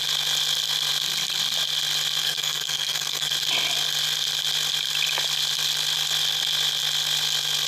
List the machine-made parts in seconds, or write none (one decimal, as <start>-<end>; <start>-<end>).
2.2-3.3